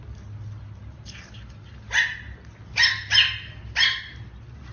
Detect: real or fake real